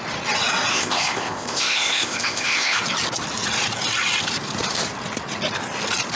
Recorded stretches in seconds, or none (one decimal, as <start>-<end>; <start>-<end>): 0.0-0.7; 2.8-6.2